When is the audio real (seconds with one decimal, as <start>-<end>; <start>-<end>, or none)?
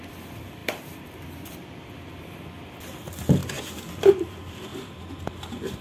4.7-5.8